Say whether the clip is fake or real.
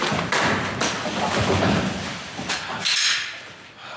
real